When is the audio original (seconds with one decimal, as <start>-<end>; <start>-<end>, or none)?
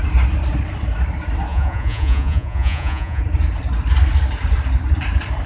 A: 0.0-1.5; 3.2-5.5